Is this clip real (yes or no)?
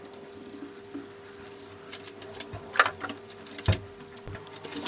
yes